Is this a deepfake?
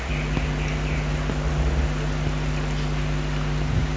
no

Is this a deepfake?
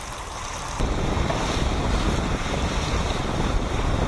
no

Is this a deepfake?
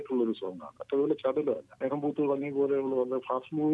no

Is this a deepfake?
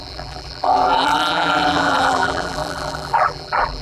yes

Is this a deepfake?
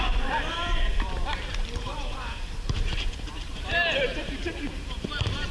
yes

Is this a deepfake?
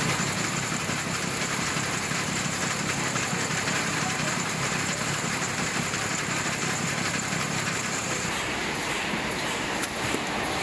yes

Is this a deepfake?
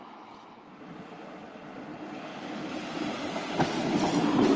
no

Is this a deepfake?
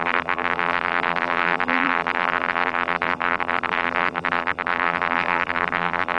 yes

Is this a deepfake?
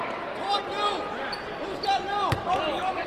yes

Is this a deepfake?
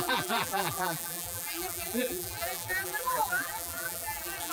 yes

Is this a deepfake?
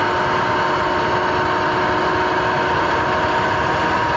no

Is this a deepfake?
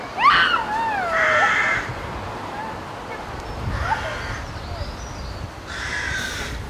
no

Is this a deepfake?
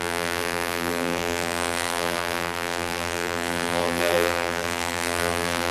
yes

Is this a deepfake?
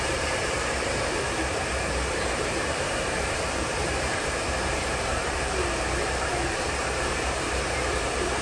yes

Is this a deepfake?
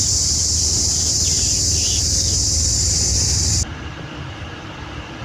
yes